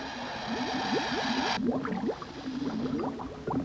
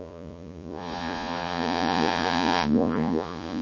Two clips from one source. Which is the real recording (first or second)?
first